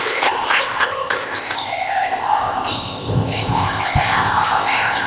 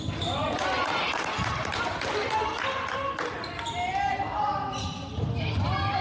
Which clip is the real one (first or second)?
second